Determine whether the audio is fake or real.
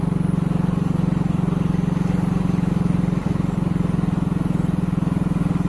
real